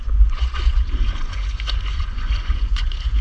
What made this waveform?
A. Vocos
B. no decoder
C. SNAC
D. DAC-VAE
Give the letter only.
A